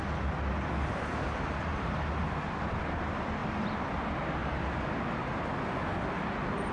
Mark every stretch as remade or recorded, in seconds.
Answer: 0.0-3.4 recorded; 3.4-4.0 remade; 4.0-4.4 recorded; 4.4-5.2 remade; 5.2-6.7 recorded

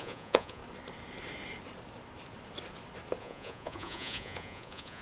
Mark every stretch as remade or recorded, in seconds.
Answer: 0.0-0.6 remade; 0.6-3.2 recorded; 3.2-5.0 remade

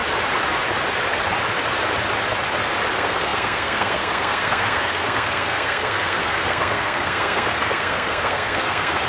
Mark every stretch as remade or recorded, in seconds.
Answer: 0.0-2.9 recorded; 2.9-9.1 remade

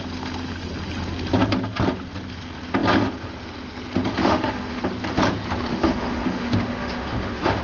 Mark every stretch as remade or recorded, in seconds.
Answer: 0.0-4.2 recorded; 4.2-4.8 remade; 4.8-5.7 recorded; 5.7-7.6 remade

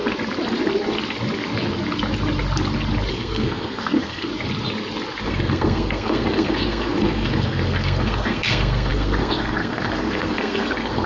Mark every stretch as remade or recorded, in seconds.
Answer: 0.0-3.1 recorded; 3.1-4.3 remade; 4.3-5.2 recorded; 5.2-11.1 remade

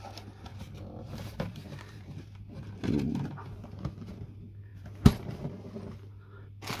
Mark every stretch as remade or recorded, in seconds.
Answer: 0.0-0.5 recorded; 0.5-2.8 remade; 2.8-4.7 recorded; 4.7-5.5 remade; 5.5-6.8 recorded

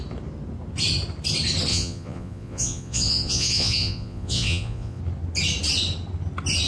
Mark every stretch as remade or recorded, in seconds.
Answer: 0.0-1.7 recorded; 1.7-5.0 remade; 5.0-6.7 recorded

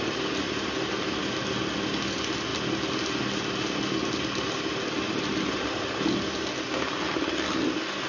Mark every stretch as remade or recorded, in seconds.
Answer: 0.0-8.1 recorded